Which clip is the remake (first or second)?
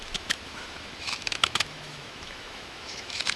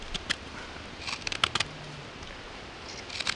first